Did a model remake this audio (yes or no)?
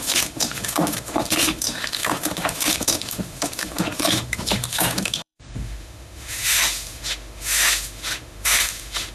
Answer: yes